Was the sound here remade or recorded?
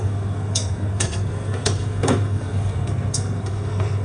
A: remade